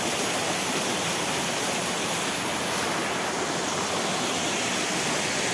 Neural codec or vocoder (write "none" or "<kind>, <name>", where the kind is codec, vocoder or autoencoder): none